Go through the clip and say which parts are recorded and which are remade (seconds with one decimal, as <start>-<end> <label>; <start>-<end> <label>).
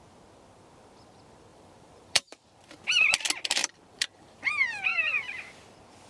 0.0-1.5 recorded; 1.5-2.8 remade; 2.8-3.6 recorded; 3.6-4.4 remade; 4.4-4.9 recorded; 4.9-5.4 remade; 5.4-6.1 recorded